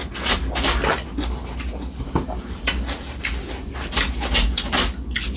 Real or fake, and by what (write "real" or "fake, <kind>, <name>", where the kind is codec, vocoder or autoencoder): real